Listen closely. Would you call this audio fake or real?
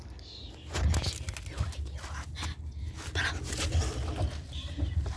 real